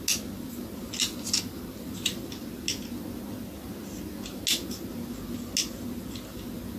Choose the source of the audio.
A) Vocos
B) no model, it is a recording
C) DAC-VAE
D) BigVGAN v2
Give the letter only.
B